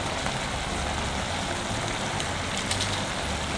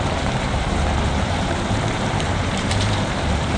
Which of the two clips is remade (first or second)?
second